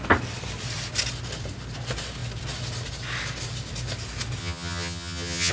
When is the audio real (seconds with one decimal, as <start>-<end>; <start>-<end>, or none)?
0.0-4.4